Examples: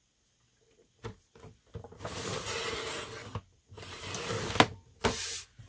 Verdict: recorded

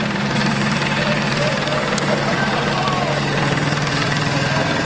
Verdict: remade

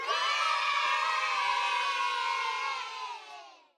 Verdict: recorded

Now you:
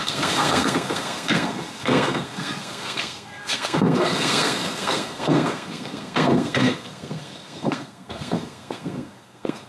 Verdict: remade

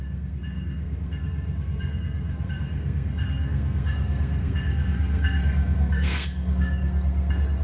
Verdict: remade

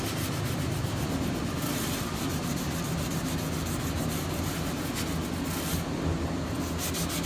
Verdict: recorded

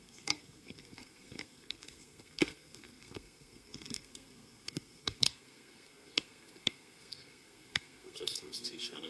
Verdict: remade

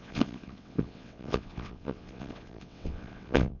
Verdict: remade